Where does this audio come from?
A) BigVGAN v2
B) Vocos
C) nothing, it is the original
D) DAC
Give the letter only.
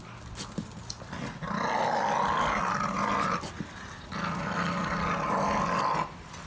C